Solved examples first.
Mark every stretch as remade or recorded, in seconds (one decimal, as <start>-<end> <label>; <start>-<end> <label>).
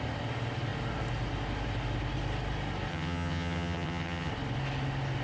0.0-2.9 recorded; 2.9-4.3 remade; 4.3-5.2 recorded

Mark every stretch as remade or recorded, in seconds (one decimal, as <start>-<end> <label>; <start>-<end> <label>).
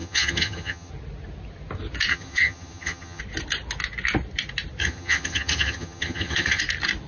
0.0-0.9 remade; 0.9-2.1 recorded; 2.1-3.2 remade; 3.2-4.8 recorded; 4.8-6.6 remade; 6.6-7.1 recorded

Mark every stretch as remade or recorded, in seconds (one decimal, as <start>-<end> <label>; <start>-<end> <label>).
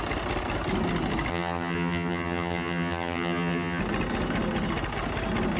0.0-1.3 recorded; 1.3-3.8 remade; 3.8-5.6 recorded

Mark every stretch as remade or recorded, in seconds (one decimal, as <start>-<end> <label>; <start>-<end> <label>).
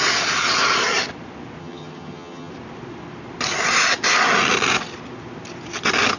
0.0-1.6 recorded; 1.6-2.5 remade; 2.5-6.2 recorded